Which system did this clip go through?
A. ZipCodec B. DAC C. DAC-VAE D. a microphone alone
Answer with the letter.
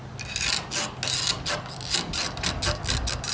D